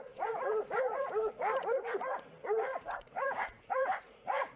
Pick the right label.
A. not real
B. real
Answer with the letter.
A